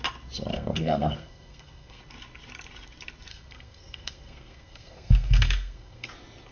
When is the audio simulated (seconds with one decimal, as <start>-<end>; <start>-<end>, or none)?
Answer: 0.5-2.0; 3.3-6.1